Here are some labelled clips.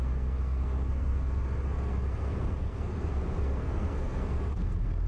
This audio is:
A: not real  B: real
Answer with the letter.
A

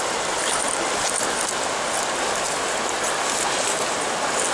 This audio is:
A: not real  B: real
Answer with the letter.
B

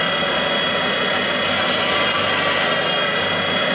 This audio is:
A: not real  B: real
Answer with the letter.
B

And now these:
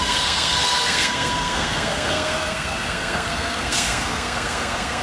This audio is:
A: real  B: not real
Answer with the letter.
B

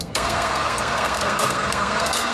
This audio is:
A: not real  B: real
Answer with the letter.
A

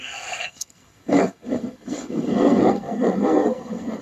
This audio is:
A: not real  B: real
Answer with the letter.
A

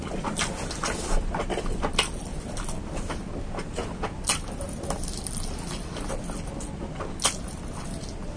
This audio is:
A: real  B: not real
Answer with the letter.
A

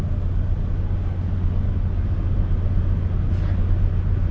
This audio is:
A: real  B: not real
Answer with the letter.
A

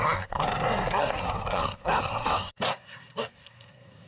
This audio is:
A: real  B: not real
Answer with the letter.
B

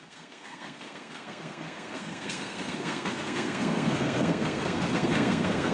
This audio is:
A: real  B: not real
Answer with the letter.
B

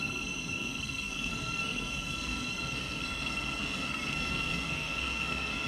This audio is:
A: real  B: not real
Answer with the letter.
B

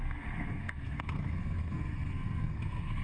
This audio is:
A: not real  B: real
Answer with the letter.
A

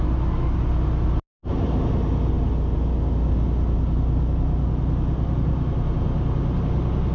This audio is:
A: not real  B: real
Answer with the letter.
B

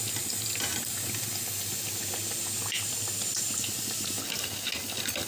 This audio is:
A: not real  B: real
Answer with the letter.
B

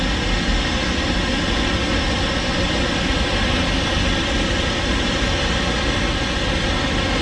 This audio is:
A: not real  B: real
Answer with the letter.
B